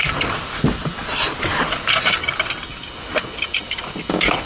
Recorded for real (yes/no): yes